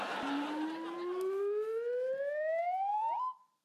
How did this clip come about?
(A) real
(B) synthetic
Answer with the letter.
A